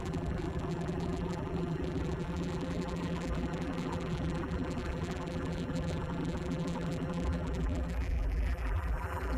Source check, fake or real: fake